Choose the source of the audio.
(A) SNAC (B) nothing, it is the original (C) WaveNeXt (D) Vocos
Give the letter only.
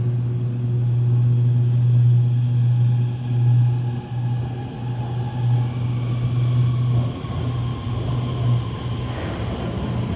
B